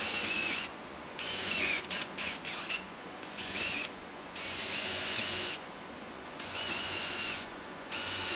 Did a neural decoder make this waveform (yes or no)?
yes